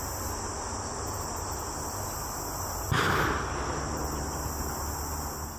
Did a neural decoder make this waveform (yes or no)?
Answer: no